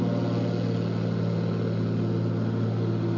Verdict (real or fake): real